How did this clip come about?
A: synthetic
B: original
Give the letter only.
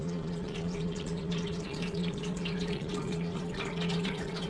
A